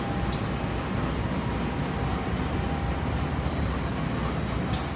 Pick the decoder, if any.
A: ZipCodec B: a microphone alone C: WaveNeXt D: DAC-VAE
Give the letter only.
B